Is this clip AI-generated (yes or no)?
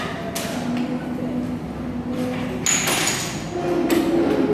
no